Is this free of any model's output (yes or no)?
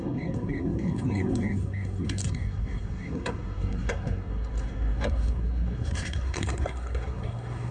no